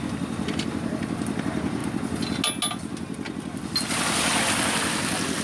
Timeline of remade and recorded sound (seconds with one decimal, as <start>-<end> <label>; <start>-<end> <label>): 0.0-5.4 recorded

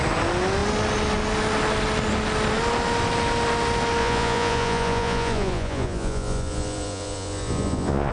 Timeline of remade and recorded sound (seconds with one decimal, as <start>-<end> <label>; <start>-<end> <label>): 0.0-4.0 recorded; 4.0-8.1 remade

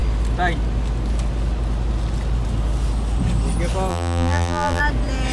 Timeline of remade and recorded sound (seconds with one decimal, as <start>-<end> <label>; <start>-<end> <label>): 0.0-3.9 recorded; 3.9-4.8 remade; 4.8-5.3 recorded

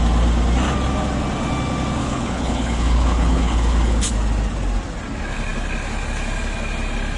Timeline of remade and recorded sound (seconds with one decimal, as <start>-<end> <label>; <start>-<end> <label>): 0.0-2.0 recorded; 2.0-4.1 remade; 4.1-7.2 recorded

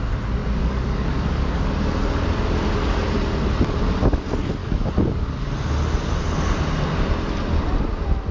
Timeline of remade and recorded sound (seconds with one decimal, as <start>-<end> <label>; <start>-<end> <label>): 0.0-0.4 recorded; 0.4-1.7 remade; 1.7-4.6 recorded; 4.6-5.1 remade; 5.1-8.3 recorded

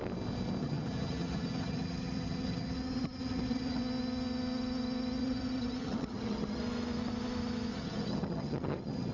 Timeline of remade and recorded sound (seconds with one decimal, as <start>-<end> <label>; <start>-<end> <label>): 0.0-0.6 recorded; 0.6-3.8 remade; 3.8-5.2 recorded; 5.2-6.6 remade; 6.6-7.7 recorded; 7.7-9.1 remade

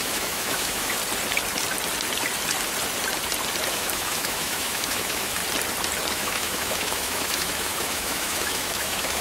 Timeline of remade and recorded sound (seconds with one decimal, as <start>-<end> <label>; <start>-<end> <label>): 0.0-1.0 remade; 1.0-3.7 recorded; 3.7-5.4 remade; 5.4-6.1 recorded; 6.1-9.2 remade

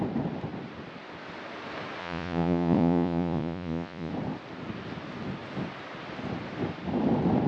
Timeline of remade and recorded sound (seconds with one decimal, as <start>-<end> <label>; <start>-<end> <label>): 0.0-2.0 recorded; 2.0-4.1 remade; 4.1-7.5 recorded